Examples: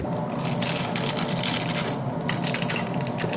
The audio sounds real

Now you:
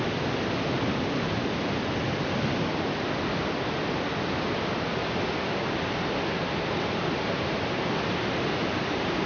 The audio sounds real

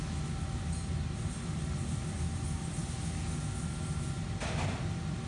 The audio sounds real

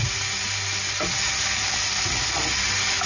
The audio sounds real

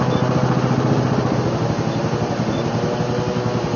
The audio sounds real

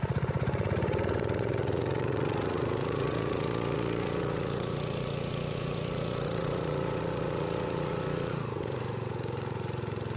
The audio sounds fake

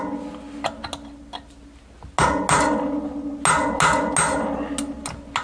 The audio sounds real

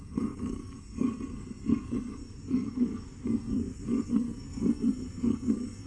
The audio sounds fake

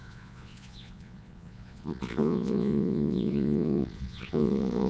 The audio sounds fake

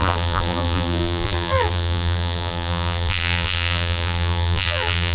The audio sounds fake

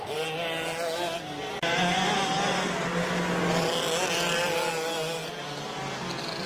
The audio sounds real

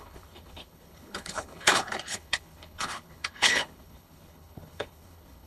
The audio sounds fake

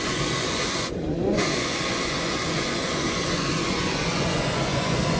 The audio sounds fake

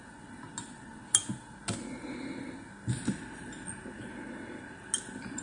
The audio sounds real